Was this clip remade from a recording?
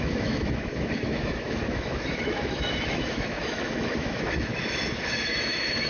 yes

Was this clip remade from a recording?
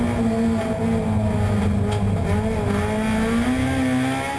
no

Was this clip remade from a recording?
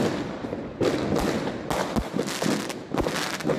no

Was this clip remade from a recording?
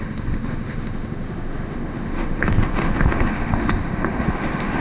yes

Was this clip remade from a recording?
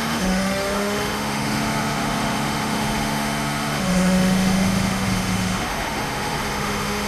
yes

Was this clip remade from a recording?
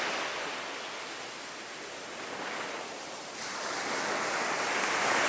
no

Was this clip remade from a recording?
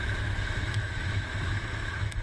yes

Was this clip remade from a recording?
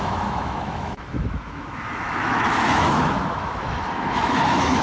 yes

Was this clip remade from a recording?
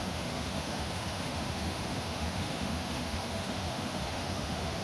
yes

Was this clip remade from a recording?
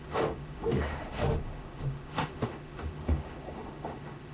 yes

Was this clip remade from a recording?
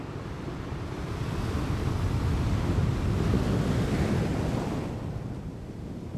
no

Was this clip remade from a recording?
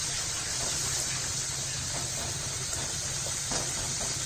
no